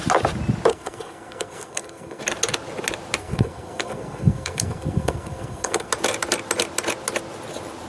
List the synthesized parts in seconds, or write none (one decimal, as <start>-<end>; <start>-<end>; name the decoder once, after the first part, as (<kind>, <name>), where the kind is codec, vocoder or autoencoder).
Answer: 0.7-2.2 (codec, SNAC); 3.2-5.9